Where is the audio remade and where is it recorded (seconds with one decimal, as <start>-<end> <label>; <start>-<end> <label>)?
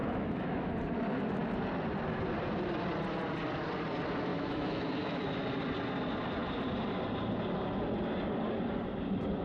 0.0-0.7 remade; 0.7-4.3 recorded; 4.3-5.2 remade; 5.2-9.4 recorded